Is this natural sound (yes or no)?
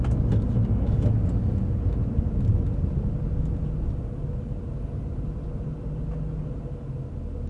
yes